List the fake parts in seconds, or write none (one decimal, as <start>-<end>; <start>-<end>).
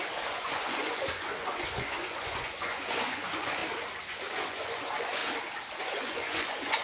0.0-3.6; 4.2-5.2; 5.8-6.8